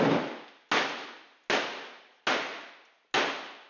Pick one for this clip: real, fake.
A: real